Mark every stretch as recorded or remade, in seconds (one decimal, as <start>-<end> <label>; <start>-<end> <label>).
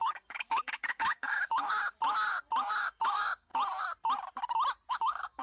0.0-1.7 remade; 1.7-2.8 recorded; 2.8-3.5 remade; 3.5-4.9 recorded; 4.9-5.4 remade